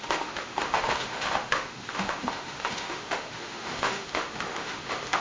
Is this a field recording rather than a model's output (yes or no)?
no